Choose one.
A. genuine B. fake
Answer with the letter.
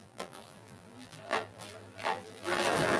B